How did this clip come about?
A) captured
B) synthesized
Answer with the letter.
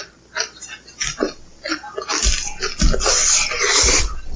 A